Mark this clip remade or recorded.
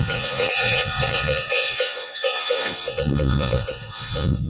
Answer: remade